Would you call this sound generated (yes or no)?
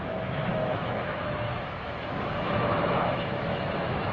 yes